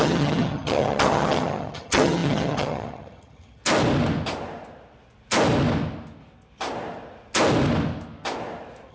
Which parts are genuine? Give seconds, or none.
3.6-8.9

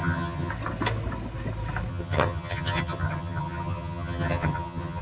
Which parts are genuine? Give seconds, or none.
0.5-1.9